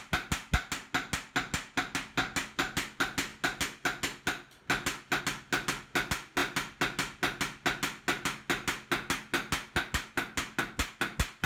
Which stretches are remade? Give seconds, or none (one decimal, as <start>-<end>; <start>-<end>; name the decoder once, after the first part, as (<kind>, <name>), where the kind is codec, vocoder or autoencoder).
none